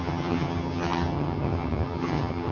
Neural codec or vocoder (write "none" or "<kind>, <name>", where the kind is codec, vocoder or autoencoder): vocoder, HiFi-GAN